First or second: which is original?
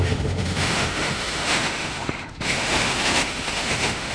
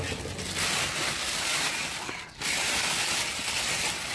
second